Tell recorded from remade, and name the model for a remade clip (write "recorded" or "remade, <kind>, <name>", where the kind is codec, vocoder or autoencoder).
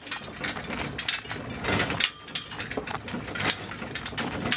recorded